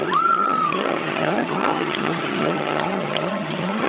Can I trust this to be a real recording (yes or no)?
no